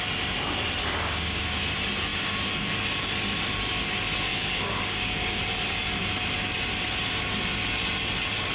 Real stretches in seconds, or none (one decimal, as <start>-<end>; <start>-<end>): 0.0-0.8; 1.6-4.3; 5.4-8.5